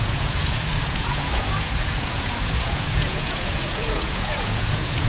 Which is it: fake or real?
fake